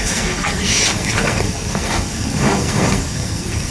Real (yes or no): no